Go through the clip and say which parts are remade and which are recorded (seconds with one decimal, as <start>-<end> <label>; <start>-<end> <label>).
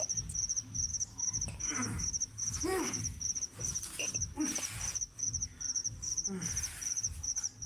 0.0-0.9 recorded; 0.9-3.0 remade; 3.0-7.7 recorded